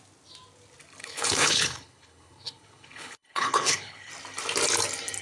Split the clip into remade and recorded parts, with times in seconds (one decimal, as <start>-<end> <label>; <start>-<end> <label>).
0.0-1.0 recorded; 1.0-4.1 remade; 4.1-5.2 recorded